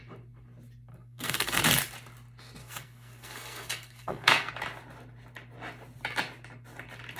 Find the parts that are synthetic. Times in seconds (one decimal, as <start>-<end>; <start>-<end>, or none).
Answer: 0.9-1.6; 2.6-4.5